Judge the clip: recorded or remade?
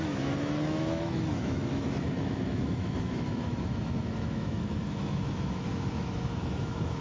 remade